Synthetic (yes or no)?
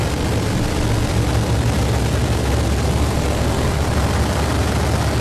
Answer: no